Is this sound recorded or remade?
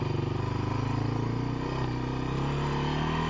recorded